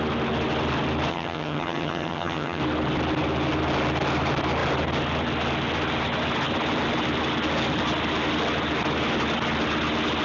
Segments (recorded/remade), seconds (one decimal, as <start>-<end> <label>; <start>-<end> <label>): 0.0-1.1 recorded; 1.1-2.6 remade; 2.6-10.2 recorded